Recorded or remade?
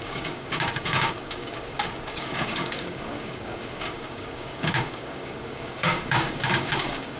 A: remade